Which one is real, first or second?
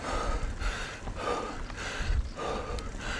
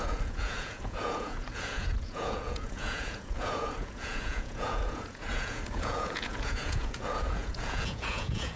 first